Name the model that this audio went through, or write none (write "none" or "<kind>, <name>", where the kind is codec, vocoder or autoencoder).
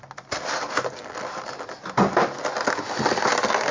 none